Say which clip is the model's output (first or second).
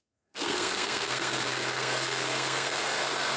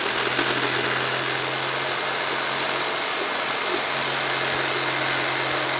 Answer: first